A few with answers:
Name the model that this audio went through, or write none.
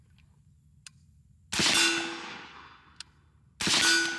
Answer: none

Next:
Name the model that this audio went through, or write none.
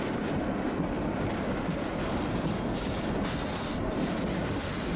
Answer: none